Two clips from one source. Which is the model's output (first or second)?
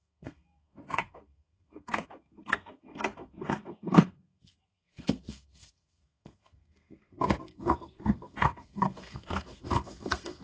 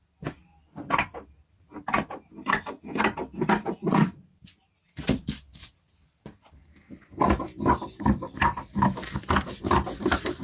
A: first